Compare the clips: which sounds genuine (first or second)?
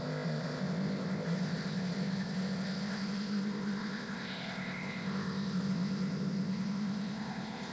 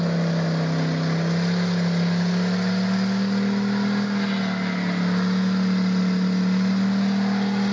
second